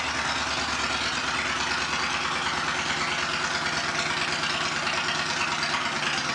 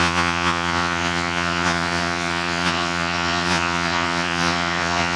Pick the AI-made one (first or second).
second